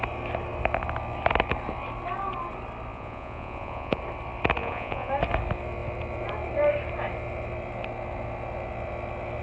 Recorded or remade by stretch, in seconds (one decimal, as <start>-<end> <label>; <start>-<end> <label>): 0.0-2.9 recorded; 2.9-4.0 remade; 4.0-4.6 recorded; 4.6-5.1 remade; 5.1-9.4 recorded